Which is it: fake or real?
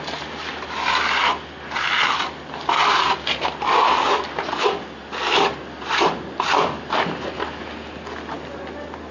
real